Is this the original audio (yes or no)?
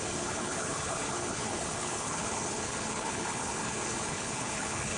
no